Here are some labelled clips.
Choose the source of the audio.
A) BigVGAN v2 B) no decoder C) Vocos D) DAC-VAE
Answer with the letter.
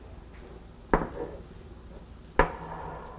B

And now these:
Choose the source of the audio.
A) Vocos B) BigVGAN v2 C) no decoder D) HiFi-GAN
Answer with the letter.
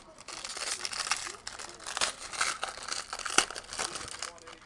C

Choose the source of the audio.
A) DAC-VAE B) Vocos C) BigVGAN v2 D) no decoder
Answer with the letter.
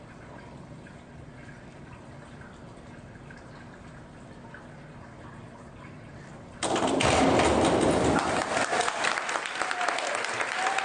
C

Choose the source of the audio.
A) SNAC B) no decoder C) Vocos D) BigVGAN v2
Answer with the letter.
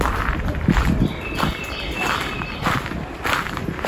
D